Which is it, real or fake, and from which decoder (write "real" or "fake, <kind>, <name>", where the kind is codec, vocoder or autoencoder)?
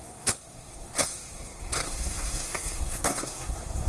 fake, codec, SNAC